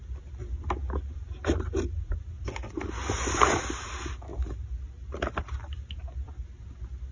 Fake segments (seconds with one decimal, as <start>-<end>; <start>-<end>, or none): none

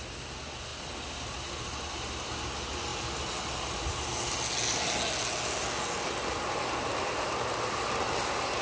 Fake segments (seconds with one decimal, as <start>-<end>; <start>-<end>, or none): none

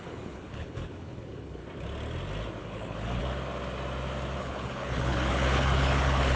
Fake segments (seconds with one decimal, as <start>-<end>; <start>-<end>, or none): 0.0-1.6; 2.6-3.2; 4.4-6.4

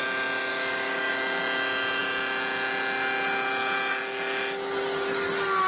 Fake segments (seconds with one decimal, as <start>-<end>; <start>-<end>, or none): 0.5-1.1

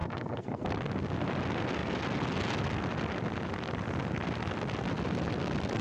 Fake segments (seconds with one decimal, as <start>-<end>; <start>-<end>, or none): 0.0-0.7